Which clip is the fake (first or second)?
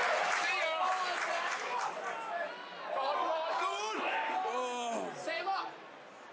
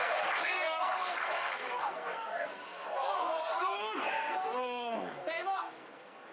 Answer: second